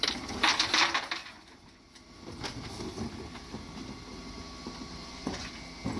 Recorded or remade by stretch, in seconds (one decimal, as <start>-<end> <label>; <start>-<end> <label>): 0.0-1.2 recorded; 1.2-1.9 remade; 1.9-5.0 recorded; 5.0-5.5 remade; 5.5-6.0 recorded